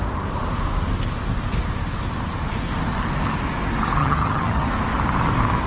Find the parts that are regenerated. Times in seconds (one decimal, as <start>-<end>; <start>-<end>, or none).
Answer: 4.0-4.7